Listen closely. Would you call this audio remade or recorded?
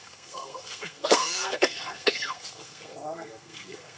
remade